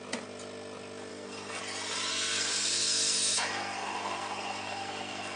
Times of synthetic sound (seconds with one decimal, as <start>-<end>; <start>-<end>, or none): 1.1-1.6; 2.1-5.4